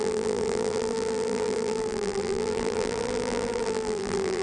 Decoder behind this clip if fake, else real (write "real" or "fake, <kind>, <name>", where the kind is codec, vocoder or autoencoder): fake, vocoder, BigVGAN v2